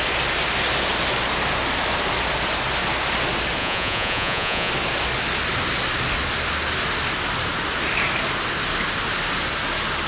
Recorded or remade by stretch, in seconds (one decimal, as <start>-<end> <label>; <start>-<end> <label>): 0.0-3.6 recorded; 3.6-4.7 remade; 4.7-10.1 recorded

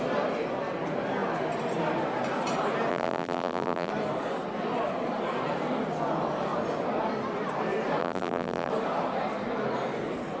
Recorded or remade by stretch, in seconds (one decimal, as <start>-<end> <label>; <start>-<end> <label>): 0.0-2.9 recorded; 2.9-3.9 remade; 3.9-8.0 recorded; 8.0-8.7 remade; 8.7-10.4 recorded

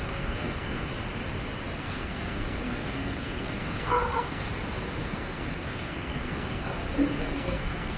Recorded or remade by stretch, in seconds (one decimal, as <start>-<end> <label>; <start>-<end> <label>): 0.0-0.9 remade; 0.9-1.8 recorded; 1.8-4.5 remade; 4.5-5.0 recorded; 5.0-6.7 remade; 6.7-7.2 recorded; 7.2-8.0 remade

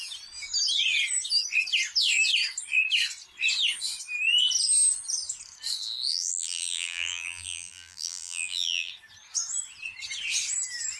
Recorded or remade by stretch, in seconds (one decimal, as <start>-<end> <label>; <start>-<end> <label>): 0.0-6.1 recorded; 6.1-8.9 remade; 8.9-11.0 recorded